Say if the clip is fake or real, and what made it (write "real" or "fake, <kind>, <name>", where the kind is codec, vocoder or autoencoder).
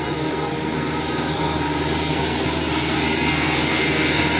fake, codec, SNAC